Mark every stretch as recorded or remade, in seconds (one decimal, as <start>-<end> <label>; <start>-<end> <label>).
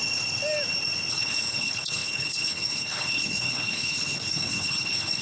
0.0-1.1 recorded; 1.1-5.2 remade